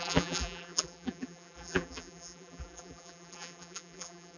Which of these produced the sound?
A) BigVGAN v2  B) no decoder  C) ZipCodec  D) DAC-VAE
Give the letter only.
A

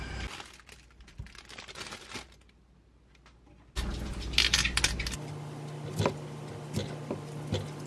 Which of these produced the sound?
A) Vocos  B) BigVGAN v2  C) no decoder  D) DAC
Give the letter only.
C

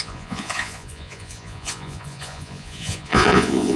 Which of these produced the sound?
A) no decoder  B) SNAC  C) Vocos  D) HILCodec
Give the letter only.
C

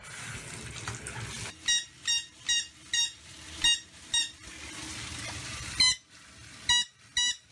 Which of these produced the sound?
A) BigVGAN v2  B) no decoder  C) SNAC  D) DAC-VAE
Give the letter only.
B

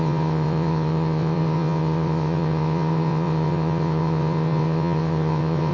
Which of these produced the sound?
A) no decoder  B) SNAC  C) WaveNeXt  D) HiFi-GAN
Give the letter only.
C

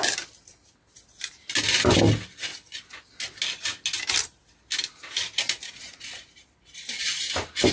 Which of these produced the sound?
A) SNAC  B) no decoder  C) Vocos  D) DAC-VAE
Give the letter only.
B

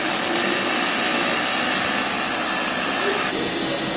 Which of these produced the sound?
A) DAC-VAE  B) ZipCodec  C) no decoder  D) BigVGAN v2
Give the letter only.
C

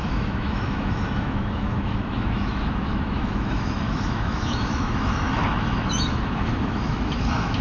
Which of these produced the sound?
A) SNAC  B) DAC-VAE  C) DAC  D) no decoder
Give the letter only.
B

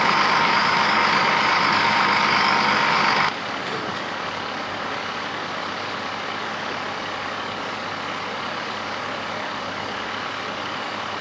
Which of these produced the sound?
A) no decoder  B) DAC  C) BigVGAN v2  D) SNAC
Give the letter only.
B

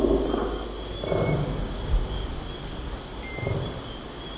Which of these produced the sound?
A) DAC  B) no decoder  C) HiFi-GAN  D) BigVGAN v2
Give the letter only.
B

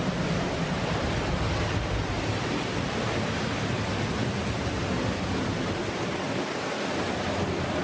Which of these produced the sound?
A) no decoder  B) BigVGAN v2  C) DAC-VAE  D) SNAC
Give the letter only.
B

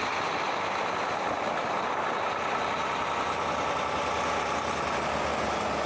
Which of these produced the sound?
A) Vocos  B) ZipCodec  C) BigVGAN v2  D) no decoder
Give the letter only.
D